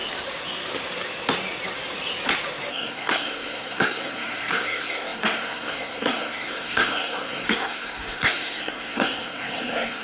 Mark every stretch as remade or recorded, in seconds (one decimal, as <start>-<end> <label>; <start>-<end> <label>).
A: 0.0-2.7 recorded; 2.7-10.0 remade

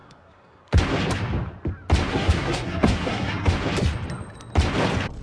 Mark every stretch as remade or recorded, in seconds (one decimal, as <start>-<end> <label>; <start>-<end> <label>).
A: 0.0-0.8 remade; 0.8-2.1 recorded; 2.1-3.5 remade; 3.5-5.2 recorded

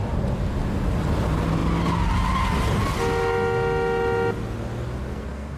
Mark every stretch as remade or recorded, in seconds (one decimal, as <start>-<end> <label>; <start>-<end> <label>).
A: 0.0-5.1 recorded; 5.1-5.6 remade

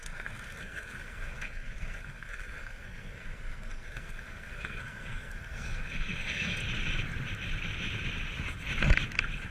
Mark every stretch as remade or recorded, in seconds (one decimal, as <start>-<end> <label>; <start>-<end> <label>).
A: 0.0-6.6 remade; 6.6-9.5 recorded

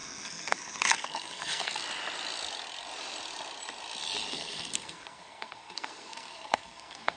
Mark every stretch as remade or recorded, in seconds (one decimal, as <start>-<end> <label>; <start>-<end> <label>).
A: 0.0-1.8 remade; 1.8-4.3 recorded; 4.3-7.2 remade